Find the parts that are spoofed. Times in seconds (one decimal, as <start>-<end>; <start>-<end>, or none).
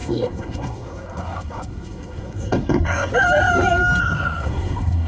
0.0-3.1; 4.0-5.1